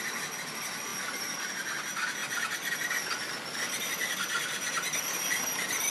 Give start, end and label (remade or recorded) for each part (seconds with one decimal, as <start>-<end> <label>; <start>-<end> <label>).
0.0-5.9 recorded